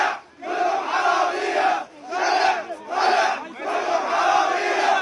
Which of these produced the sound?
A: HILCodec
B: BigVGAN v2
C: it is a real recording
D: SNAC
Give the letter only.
C